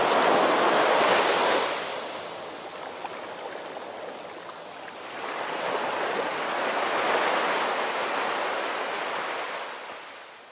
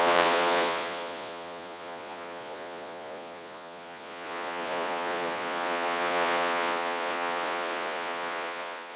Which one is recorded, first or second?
first